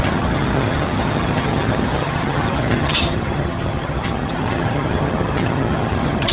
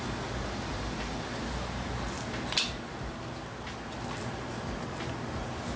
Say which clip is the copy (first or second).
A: first